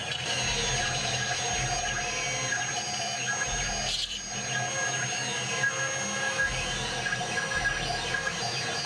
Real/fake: real